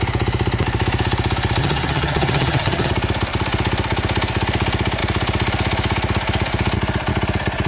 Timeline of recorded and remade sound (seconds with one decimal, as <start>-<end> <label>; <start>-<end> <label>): 0.0-1.6 recorded; 1.6-2.9 remade; 2.9-7.7 recorded